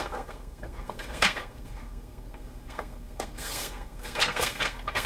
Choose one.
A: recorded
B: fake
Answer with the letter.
B